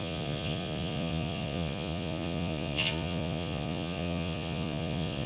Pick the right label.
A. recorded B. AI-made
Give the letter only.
B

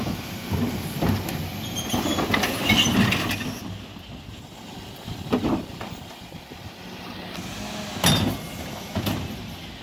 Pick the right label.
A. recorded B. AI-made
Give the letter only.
A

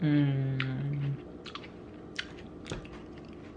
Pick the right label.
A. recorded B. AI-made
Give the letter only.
A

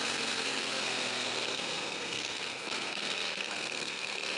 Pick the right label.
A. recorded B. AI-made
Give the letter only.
B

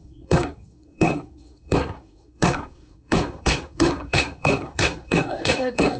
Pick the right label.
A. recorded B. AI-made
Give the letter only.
B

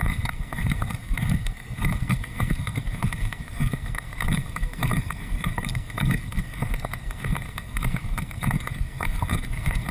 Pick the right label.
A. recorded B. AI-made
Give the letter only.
B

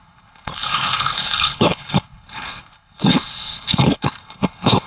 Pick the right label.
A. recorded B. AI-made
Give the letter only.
B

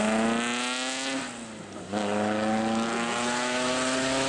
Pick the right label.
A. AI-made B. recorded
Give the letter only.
B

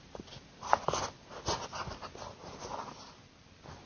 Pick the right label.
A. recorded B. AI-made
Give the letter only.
A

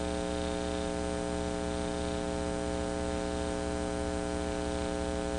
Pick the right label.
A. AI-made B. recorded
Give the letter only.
B